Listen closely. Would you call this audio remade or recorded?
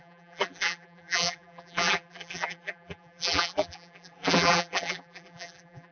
remade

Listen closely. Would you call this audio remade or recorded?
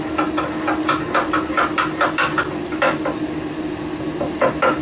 recorded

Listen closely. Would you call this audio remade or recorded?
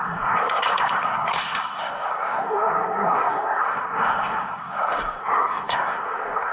remade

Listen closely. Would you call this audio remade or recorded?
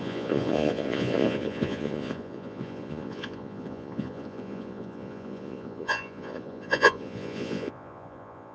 remade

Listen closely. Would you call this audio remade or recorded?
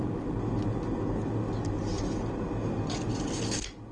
recorded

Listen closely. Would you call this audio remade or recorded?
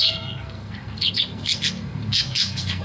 remade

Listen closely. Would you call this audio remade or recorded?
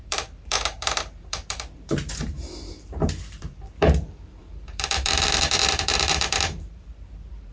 remade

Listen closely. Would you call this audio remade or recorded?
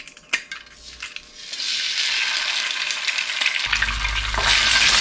recorded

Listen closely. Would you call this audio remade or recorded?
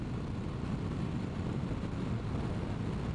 recorded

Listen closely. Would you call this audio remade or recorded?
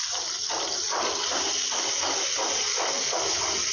recorded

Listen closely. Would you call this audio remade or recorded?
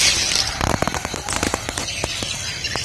recorded